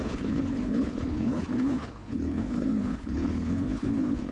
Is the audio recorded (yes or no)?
no